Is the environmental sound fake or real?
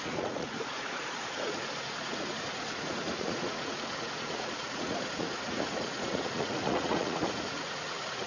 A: fake